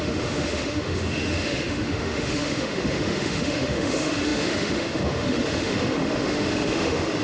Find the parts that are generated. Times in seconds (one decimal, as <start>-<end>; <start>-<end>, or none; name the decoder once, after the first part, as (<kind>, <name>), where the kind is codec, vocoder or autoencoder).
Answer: 0.0-7.2 (autoencoder, DAC-VAE)